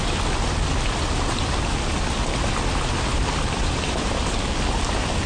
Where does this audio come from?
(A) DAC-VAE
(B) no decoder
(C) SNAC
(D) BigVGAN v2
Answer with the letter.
B